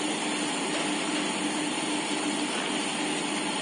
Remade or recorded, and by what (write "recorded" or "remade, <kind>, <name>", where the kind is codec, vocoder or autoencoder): recorded